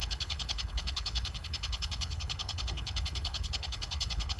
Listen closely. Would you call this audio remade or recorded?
remade